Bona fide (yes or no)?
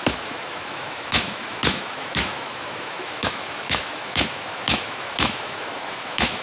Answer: no